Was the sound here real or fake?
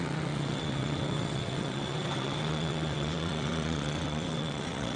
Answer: fake